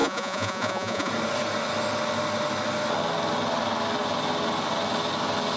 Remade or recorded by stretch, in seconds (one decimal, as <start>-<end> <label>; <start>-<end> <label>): 0.0-1.1 remade; 1.1-5.6 recorded